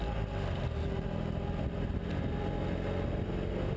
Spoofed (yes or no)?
no